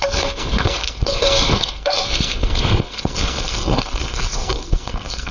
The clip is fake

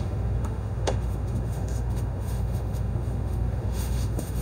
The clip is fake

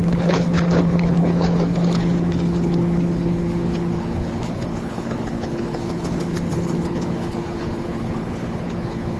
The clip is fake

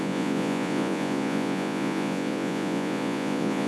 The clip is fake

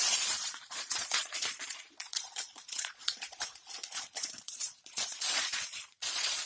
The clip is fake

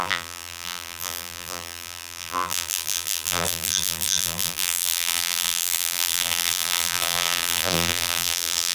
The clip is fake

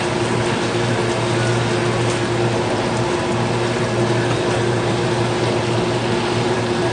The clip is real